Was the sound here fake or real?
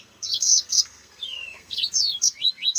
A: fake